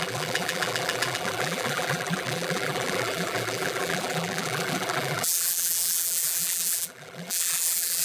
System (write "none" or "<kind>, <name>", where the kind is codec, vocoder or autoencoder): vocoder, BigVGAN v2